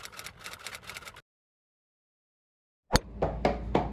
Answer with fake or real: real